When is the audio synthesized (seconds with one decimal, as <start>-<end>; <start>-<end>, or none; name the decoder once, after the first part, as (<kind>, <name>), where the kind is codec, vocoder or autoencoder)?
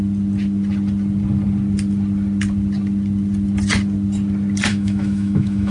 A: 4.7-5.7 (autoencoder, DAC-VAE)